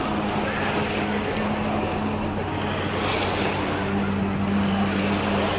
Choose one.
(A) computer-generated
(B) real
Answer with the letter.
B